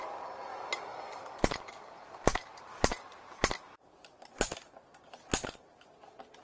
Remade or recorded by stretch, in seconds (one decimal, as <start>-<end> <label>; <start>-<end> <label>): 0.0-2.3 recorded; 2.3-4.8 remade; 4.8-6.4 recorded